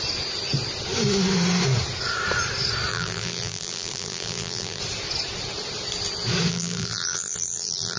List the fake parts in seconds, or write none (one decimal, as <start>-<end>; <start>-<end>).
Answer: 2.9-4.8; 6.5-8.0